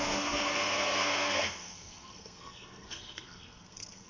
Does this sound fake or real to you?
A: fake